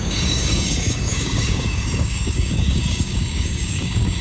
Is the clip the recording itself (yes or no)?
no